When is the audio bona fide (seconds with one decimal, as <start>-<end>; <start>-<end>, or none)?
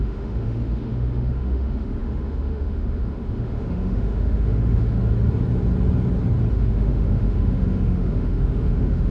5.0-6.5